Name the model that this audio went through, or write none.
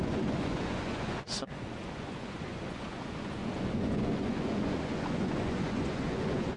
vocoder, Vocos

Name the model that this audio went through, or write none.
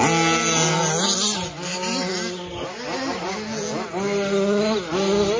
none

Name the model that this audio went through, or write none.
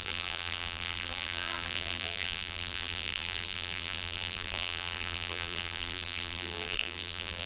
vocoder, BigVGAN v2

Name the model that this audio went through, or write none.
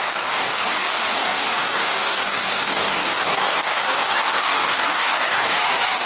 codec, DAC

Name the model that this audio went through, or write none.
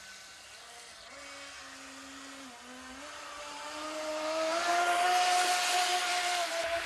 none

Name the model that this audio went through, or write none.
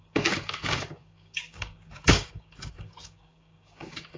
codec, DAC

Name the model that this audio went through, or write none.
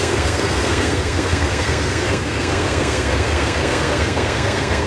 codec, SNAC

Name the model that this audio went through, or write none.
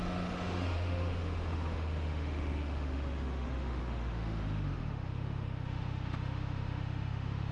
autoencoder, DAC-VAE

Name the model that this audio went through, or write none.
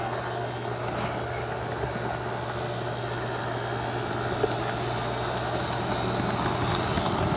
none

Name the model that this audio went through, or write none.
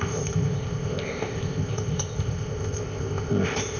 codec, ZipCodec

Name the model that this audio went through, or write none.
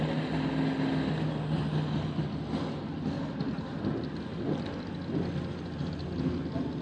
none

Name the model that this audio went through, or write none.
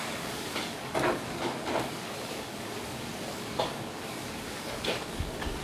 codec, DAC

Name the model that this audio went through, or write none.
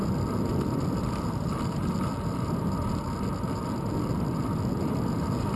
none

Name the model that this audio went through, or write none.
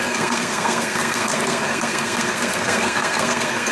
codec, SNAC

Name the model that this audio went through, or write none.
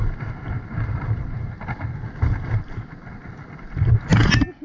none